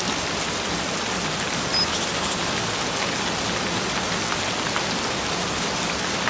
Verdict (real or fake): real